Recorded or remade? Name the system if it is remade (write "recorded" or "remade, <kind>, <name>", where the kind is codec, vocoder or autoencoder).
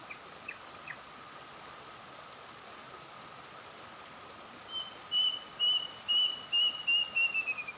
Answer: recorded